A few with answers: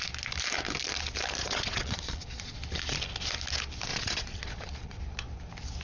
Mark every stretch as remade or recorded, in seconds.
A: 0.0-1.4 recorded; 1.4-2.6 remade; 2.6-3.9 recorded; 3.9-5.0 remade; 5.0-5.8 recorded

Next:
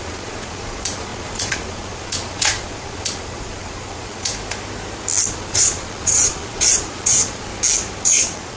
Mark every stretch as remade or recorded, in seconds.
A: 0.0-4.3 remade; 4.3-5.3 recorded; 5.3-7.5 remade; 7.5-8.0 recorded; 8.0-8.6 remade

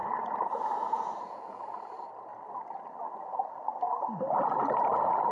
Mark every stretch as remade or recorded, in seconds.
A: 0.0-1.8 remade; 1.8-5.3 recorded

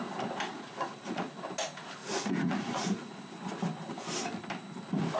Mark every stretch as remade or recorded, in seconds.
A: 0.0-0.5 recorded; 0.5-1.4 remade; 1.4-2.0 recorded; 2.0-3.2 remade; 3.2-5.2 recorded

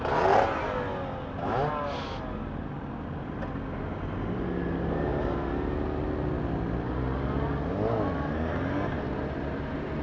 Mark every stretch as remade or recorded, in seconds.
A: 0.0-10.0 recorded